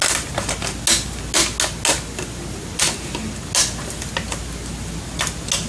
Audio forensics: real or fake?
real